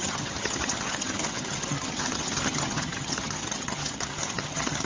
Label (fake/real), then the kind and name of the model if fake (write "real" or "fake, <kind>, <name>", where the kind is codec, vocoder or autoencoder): fake, vocoder, HiFi-GAN